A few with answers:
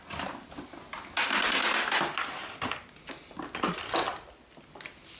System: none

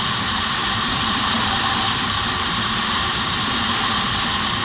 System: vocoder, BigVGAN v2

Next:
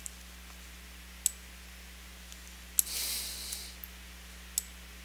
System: none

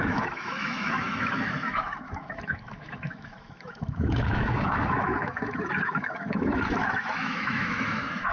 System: autoencoder, DAC-VAE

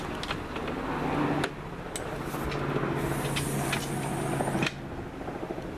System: none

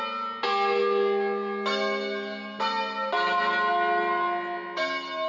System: none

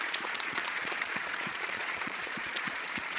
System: vocoder, Vocos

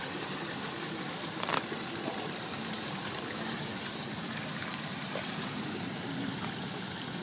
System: vocoder, BigVGAN v2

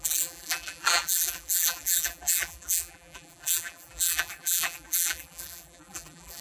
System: vocoder, BigVGAN v2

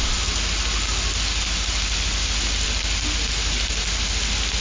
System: none